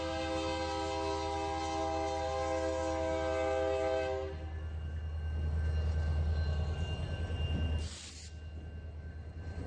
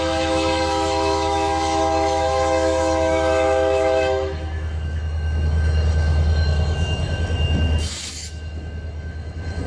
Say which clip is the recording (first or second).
first